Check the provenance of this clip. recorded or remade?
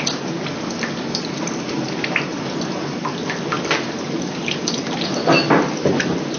recorded